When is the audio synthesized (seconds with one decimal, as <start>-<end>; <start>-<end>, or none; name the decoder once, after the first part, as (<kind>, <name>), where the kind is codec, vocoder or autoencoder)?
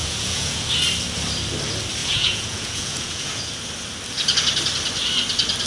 0.0-0.7 (vocoder, Vocos); 2.0-3.4